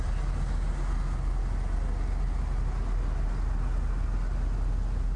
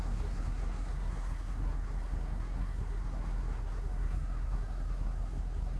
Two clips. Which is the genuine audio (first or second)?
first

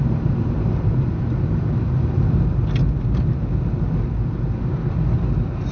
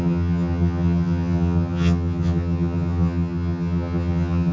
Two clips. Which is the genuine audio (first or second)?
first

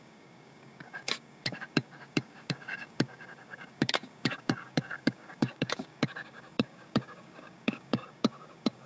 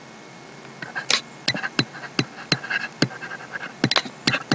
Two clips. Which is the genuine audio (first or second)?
second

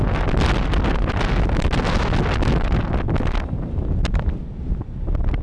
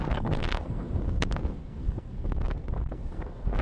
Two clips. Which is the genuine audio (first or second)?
first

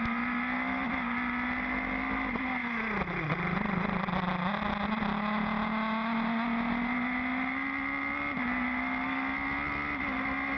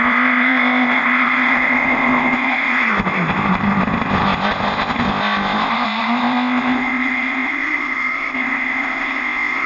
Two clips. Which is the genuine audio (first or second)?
first